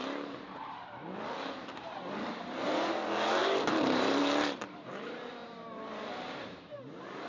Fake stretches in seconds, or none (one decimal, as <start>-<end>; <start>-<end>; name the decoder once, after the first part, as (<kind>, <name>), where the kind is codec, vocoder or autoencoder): 3.4-4.2 (vocoder, BigVGAN v2); 5.4-7.3